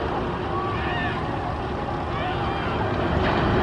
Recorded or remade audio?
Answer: recorded